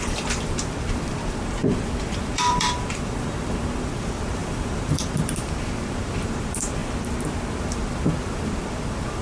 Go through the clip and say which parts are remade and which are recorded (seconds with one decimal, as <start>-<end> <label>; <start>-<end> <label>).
0.0-6.8 remade; 6.8-7.6 recorded; 7.6-9.2 remade